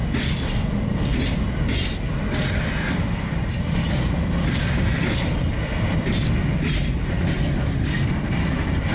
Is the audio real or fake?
real